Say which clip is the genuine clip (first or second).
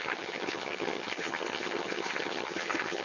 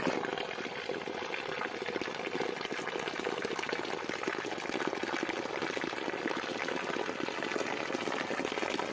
second